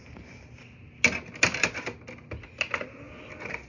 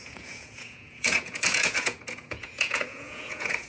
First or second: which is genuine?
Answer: first